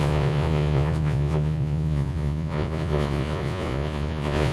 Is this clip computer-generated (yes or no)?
yes